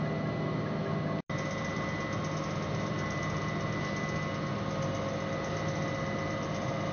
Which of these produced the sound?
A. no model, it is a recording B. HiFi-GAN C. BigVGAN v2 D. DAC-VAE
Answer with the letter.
A